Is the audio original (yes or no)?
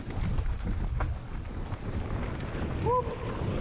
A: yes